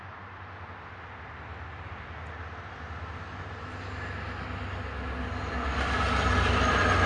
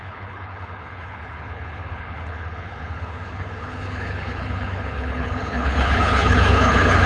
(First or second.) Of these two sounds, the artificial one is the second